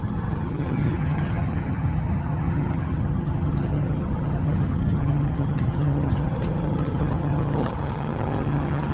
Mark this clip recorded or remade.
remade